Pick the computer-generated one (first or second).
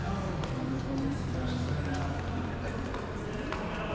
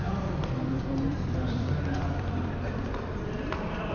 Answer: second